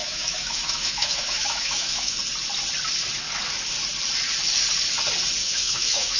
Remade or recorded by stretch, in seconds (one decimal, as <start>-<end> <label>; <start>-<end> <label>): 0.0-2.2 remade; 2.2-5.4 recorded; 5.4-6.2 remade